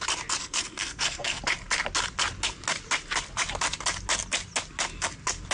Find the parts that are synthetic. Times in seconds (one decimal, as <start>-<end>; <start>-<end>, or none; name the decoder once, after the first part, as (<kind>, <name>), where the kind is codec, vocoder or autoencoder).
0.4-1.4 (codec, SNAC)

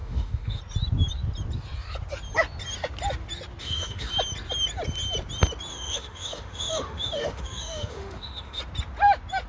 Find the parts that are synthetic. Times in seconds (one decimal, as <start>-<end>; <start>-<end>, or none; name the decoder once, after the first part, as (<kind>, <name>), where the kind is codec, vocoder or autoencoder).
0.0-0.6 (autoencoder, DAC-VAE); 3.6-4.1; 5.7-8.6

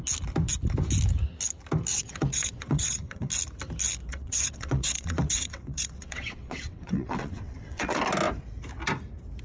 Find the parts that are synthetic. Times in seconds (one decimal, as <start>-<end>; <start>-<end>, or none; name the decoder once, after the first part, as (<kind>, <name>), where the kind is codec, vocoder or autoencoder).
1.9-3.3 (vocoder, WaveNeXt); 4.1-8.0

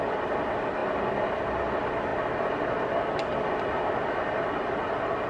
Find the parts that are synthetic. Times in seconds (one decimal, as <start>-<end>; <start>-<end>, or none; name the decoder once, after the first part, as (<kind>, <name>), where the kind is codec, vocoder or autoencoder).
none

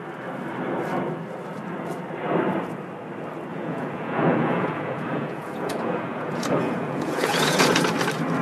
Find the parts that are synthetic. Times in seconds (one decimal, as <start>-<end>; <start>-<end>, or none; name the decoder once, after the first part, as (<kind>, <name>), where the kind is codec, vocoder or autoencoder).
3.5-7.8 (vocoder, Vocos)